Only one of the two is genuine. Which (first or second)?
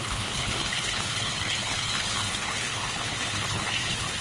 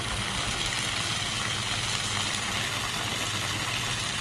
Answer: second